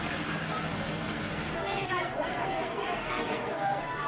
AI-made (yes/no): yes